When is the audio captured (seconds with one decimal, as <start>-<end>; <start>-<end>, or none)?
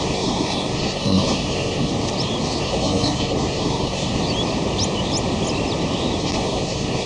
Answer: 1.9-2.6; 4.2-6.2